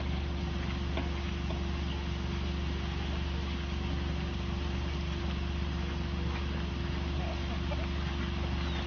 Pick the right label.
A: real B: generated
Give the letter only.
A